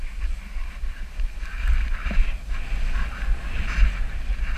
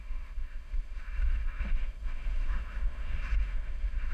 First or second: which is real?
first